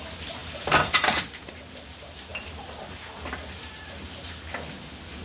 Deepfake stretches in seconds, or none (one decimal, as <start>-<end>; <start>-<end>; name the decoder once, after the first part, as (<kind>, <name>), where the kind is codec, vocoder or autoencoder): 0.4-1.5 (vocoder, BigVGAN v2)